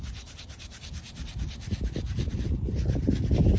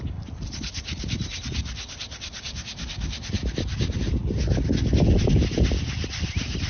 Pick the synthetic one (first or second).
first